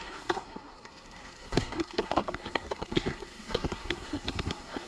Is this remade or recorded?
remade